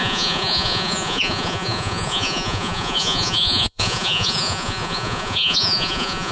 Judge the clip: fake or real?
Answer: fake